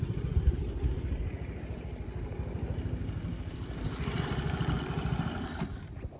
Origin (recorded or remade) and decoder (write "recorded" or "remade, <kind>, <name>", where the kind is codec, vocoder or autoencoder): remade, vocoder, BigVGAN v2